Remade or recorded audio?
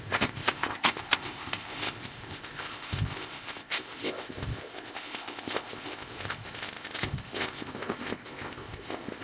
remade